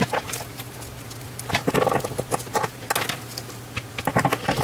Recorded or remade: recorded